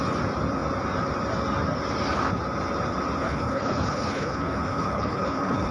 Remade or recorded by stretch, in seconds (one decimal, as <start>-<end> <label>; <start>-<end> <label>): 0.0-3.2 recorded; 3.2-5.7 remade